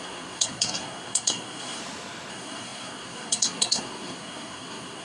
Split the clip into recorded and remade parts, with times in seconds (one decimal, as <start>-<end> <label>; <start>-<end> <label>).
0.0-1.8 remade; 1.8-2.3 recorded; 2.3-5.0 remade